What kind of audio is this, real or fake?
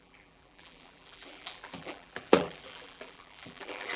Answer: fake